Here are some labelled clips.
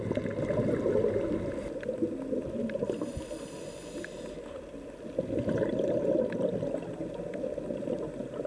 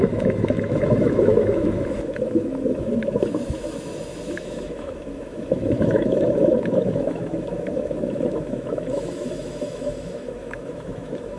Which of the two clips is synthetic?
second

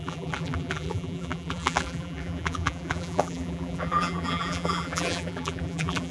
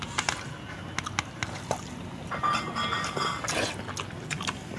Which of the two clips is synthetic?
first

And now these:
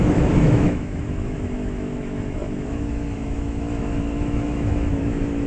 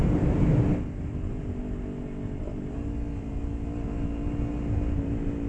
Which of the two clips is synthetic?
first